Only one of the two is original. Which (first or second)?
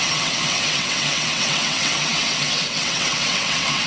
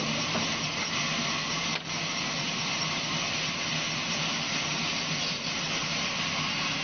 second